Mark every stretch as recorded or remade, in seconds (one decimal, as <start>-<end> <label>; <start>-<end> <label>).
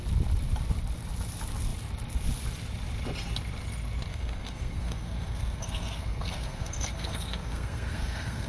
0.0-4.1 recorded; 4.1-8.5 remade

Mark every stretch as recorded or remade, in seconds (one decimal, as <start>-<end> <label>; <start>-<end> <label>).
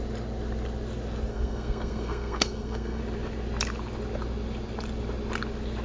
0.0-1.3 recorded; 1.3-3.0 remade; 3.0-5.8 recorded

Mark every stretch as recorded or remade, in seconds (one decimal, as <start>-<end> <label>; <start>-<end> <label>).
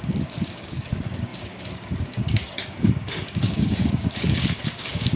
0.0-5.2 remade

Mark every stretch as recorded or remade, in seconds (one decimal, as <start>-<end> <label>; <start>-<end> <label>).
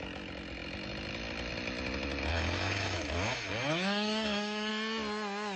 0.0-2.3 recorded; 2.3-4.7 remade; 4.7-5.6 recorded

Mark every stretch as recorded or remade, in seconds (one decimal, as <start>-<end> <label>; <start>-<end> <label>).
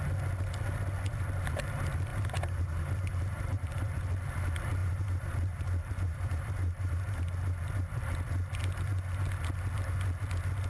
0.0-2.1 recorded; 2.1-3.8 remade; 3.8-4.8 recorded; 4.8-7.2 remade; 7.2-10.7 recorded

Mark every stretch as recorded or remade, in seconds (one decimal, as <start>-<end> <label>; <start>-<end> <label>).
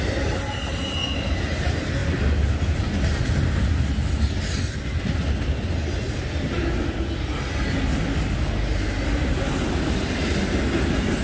0.0-11.2 recorded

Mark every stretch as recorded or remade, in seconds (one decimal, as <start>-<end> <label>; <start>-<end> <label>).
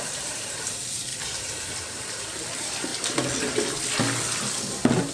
0.0-2.9 remade; 2.9-5.1 recorded